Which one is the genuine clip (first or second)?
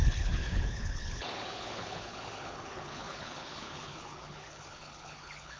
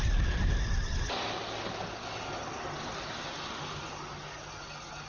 second